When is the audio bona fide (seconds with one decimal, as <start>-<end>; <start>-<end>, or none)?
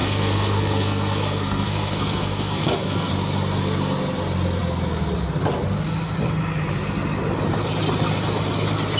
3.1-9.0